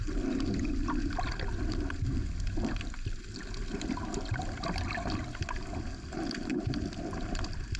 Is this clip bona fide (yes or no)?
yes